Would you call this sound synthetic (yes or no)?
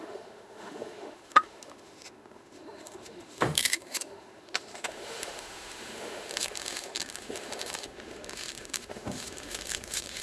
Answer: yes